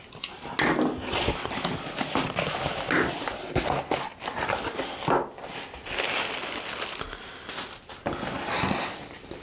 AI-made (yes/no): no